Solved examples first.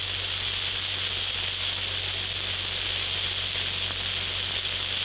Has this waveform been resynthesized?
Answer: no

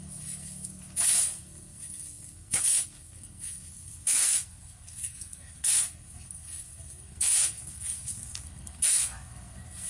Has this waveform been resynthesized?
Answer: yes